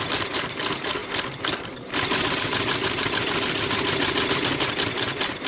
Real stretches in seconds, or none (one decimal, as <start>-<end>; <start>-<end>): 0.0-5.5

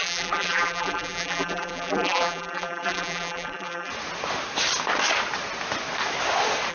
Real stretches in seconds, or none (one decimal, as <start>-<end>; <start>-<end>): 3.9-6.7